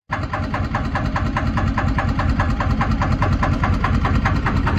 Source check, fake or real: fake